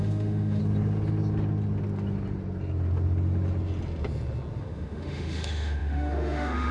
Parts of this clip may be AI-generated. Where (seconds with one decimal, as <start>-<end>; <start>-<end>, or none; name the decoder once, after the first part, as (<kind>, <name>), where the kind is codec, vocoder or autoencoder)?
0.0-0.6 (autoencoder, DAC-VAE); 4.6-6.7